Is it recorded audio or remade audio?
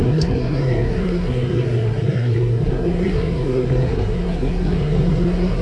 remade